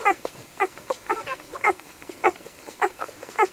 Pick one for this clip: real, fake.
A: fake